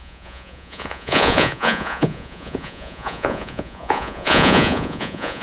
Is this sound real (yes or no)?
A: no